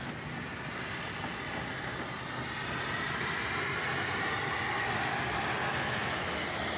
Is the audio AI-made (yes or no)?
no